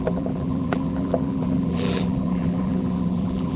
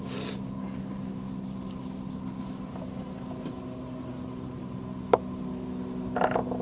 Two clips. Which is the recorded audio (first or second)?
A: second